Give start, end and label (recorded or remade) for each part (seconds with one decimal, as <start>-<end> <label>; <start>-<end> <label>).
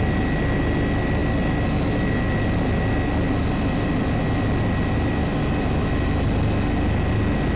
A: 0.0-7.6 recorded